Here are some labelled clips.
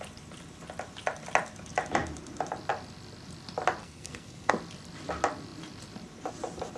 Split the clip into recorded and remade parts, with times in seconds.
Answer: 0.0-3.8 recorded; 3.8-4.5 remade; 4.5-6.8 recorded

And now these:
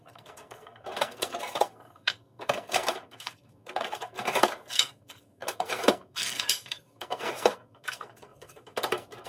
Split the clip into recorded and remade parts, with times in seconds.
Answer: 0.0-9.3 remade

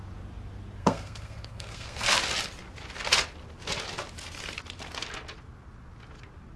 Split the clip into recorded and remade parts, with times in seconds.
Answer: 0.0-0.8 recorded; 0.8-2.1 remade; 2.1-6.6 recorded

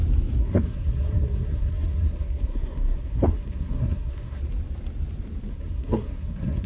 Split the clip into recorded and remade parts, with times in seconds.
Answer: 0.0-0.4 recorded; 0.4-4.4 remade; 4.4-5.5 recorded; 5.5-6.7 remade

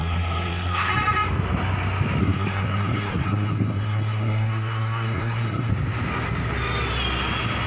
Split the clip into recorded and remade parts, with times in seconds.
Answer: 0.0-0.9 remade; 0.9-2.2 recorded; 2.2-5.7 remade; 5.7-7.7 recorded